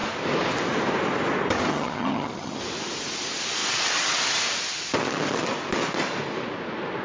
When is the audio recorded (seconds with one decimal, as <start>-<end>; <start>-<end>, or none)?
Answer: 0.0-1.7; 2.6-7.0